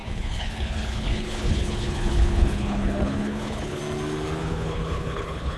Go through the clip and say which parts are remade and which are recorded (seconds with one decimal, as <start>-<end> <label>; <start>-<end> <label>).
0.0-3.8 remade; 3.8-4.4 recorded; 4.4-5.6 remade